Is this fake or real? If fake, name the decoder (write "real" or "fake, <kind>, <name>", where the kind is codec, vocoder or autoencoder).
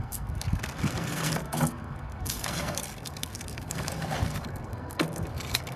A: fake, codec, SNAC